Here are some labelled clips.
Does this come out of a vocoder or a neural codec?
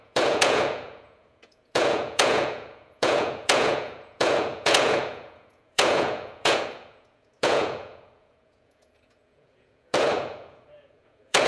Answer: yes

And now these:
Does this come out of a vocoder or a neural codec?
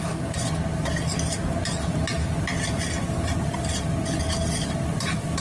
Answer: no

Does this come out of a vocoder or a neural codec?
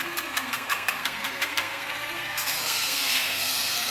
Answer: yes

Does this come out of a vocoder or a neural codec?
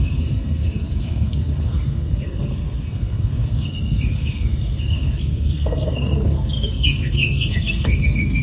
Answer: yes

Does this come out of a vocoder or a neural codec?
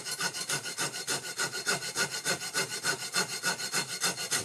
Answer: yes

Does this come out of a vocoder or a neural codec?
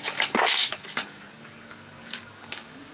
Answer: yes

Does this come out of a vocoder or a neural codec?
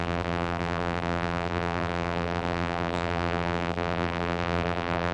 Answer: yes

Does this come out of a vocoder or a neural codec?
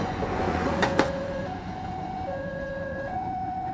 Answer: yes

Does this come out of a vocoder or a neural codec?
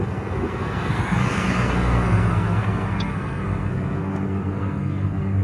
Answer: yes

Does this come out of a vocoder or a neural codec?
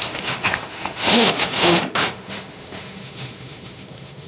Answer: yes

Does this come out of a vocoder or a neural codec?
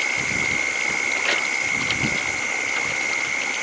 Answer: no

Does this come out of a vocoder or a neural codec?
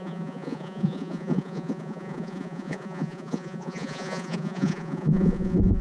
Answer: yes